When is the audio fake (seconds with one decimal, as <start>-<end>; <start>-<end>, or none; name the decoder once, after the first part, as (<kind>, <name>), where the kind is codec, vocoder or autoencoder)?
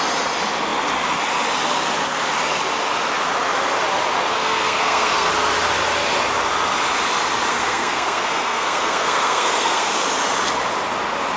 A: 4.3-5.3 (codec, SNAC); 7.5-9.9